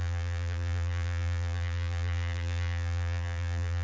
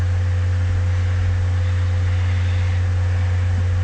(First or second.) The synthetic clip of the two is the first